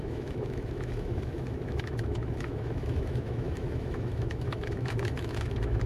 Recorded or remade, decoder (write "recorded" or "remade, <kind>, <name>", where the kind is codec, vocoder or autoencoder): remade, autoencoder, DAC-VAE